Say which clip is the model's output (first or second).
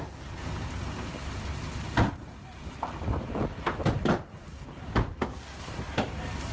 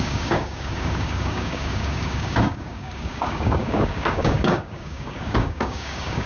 second